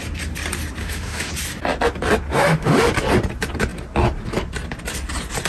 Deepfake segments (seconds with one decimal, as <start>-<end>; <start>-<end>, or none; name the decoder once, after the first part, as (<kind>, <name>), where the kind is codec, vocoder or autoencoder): 0.8-1.3 (autoencoder, DAC-VAE); 2.3-2.9